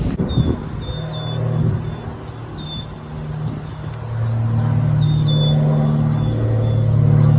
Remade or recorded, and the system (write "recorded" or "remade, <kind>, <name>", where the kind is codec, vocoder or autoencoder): recorded